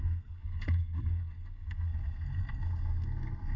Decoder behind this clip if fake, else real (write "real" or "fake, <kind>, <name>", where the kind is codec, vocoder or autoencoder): fake, codec, SNAC